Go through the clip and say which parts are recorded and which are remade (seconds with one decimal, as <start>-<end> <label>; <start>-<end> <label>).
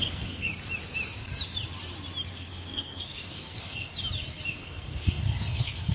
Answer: 0.0-0.5 remade; 0.5-2.3 recorded; 2.3-3.9 remade; 3.9-4.5 recorded; 4.5-5.9 remade